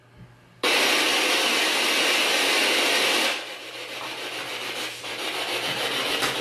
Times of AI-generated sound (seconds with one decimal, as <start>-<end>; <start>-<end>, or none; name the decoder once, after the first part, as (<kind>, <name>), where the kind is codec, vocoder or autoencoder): none